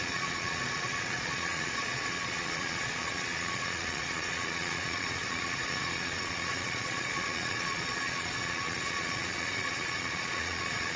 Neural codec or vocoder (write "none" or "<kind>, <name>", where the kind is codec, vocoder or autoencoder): vocoder, Vocos